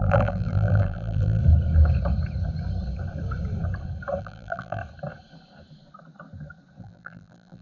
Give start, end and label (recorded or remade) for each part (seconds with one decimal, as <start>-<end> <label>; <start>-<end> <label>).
0.0-1.4 remade; 1.4-4.2 recorded; 4.2-4.8 remade; 4.8-6.8 recorded; 6.8-7.6 remade